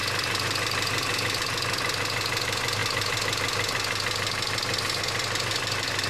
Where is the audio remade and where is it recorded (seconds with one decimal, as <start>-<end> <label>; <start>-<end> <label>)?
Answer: 0.0-6.1 recorded